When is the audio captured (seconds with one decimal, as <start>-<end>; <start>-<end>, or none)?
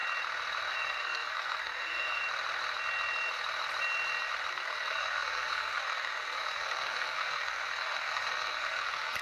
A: 0.0-0.7; 2.2-4.5